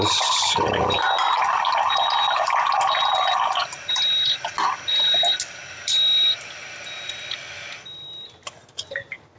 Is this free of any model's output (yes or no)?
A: yes